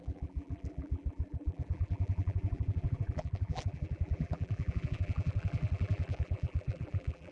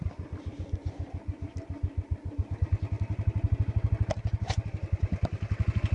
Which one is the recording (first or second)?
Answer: second